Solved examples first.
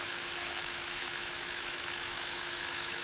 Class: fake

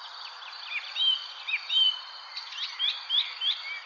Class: real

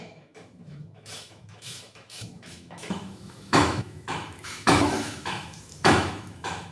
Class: fake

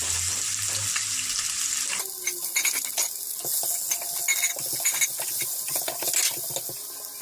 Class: real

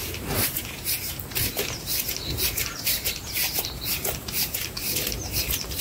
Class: real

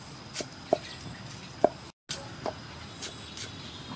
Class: real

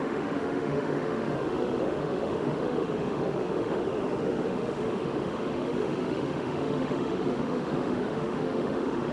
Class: fake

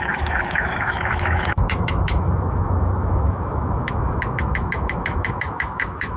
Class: fake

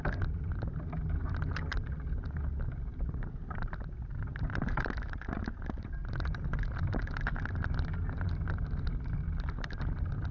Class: real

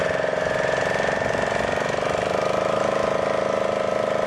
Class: real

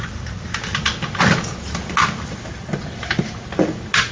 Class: real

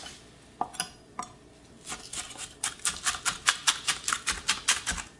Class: real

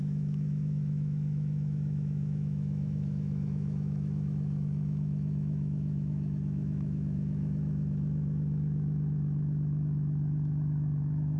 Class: fake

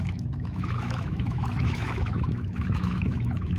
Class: fake